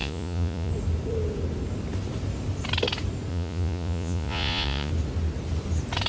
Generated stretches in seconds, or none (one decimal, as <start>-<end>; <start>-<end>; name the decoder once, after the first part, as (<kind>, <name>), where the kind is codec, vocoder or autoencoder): 0.0-0.7 (vocoder, Vocos); 3.3-4.9